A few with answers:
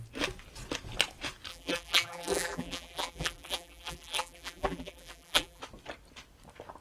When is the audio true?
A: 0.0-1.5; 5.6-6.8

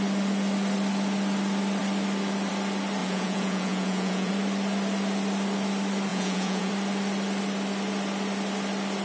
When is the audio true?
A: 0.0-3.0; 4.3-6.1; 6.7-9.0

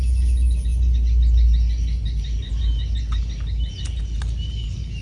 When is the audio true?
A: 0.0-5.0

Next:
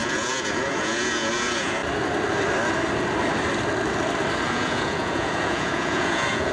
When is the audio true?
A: 1.8-4.5

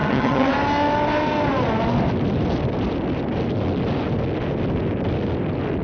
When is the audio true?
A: 0.5-5.8